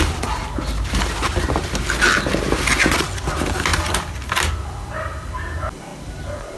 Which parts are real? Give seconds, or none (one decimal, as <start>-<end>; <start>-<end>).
0.0-6.6